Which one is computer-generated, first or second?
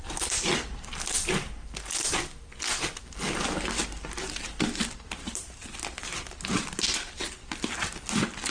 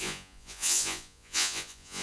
second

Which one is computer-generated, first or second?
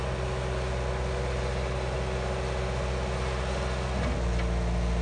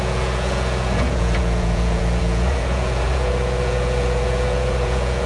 second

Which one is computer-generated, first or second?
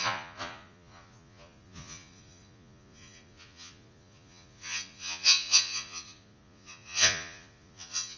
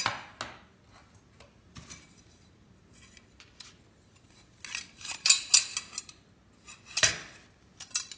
first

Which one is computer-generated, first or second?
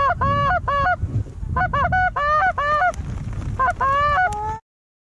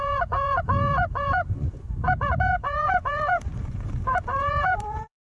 second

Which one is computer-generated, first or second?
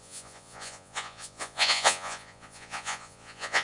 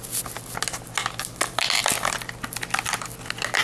first